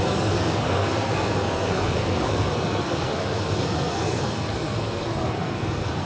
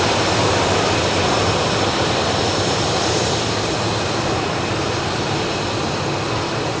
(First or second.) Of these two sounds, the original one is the second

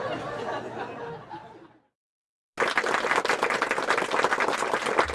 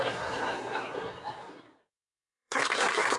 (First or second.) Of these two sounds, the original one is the first